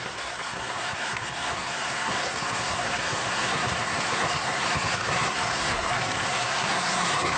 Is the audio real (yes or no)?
no